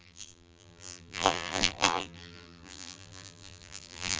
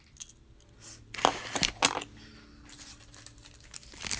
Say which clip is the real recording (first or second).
second